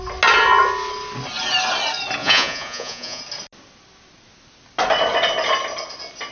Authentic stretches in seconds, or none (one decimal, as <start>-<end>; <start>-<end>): 0.0-2.2; 3.2-6.3